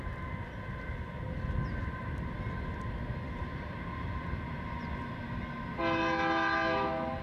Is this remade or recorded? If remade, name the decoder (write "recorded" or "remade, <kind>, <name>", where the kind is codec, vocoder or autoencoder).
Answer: recorded